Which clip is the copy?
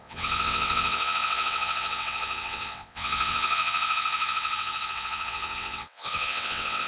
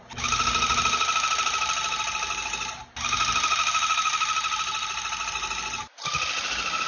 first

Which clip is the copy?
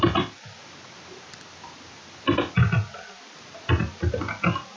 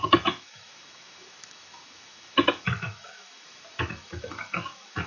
second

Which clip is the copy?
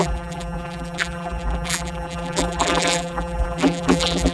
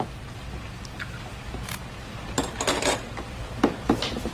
first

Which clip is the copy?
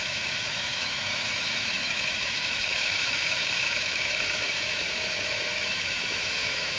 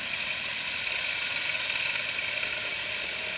first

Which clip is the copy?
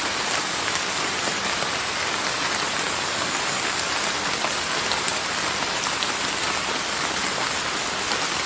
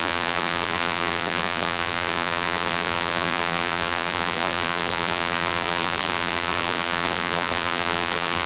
second